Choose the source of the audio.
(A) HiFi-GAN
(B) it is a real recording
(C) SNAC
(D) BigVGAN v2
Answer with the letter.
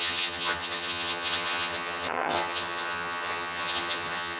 A